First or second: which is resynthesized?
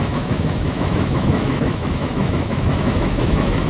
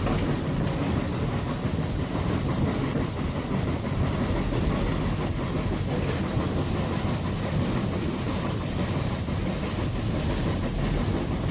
first